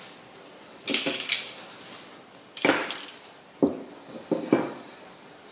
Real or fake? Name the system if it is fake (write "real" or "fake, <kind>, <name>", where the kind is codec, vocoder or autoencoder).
real